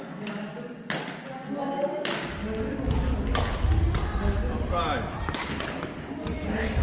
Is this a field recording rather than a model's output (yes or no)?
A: yes